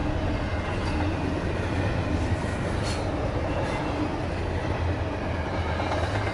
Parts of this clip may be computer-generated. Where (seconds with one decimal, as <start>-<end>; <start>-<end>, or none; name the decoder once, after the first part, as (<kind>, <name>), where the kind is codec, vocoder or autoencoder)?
none